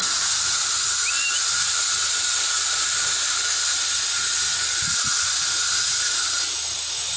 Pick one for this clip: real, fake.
real